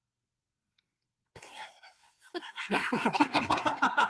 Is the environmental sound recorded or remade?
remade